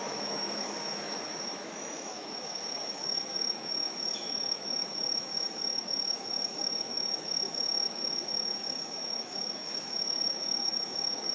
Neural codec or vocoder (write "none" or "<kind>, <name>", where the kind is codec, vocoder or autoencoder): autoencoder, DAC-VAE